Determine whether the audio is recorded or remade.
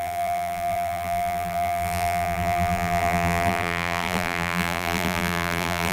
remade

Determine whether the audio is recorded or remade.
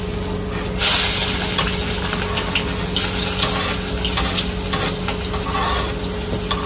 recorded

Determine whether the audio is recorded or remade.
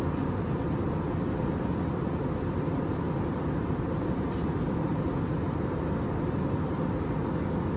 recorded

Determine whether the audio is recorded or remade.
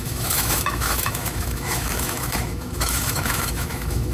remade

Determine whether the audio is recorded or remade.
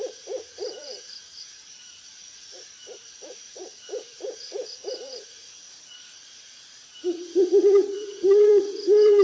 remade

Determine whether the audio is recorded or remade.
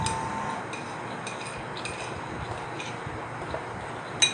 recorded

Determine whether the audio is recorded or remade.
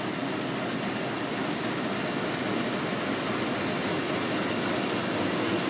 recorded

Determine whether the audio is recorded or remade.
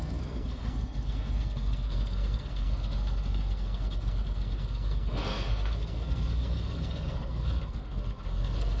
remade